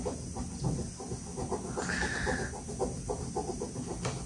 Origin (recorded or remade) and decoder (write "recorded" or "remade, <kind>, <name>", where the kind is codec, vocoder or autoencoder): recorded